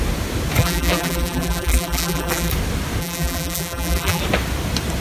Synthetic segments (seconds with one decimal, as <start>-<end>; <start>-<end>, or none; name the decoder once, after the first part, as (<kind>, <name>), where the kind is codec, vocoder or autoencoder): 0.6-2.5 (vocoder, BigVGAN v2); 3.0-4.2